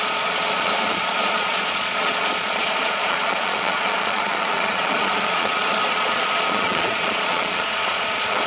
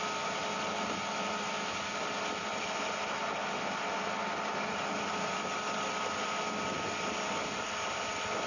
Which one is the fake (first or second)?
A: first